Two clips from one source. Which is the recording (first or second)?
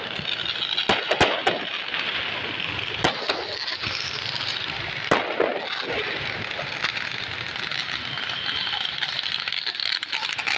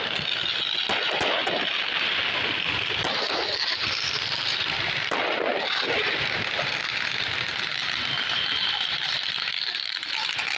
first